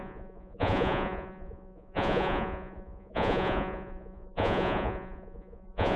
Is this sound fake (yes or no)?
yes